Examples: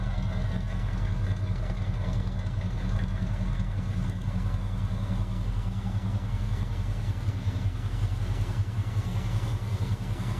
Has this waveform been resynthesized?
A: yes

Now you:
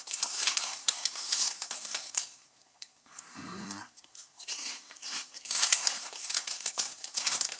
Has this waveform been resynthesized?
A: yes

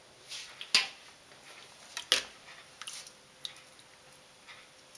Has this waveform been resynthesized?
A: no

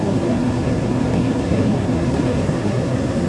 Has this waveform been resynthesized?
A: yes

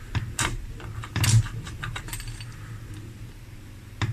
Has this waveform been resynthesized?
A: no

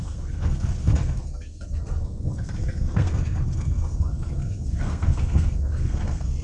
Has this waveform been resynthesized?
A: yes